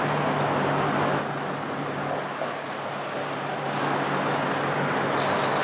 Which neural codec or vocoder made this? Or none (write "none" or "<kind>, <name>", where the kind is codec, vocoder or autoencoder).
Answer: none